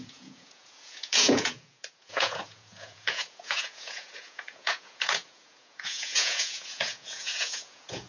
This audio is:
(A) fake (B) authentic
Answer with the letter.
A